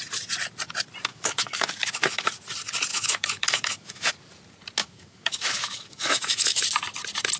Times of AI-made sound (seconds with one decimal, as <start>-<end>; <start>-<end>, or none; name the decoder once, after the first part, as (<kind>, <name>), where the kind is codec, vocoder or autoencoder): 1.1-2.3 (autoencoder, DAC-VAE); 2.9-4.1; 4.8-6.6